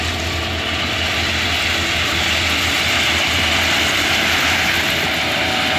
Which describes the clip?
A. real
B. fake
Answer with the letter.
A